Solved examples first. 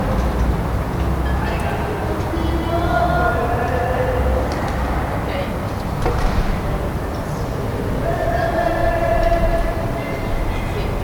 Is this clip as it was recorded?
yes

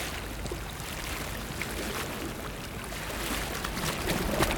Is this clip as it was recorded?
yes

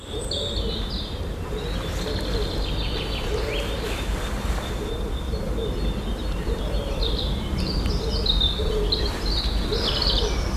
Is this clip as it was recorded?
yes